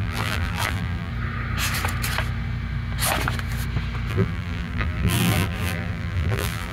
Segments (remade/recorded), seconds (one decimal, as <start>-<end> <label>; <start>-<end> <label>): 0.0-1.1 remade; 1.1-4.1 recorded; 4.1-6.7 remade